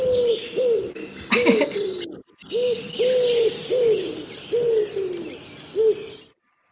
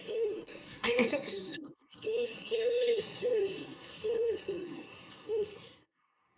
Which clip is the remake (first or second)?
second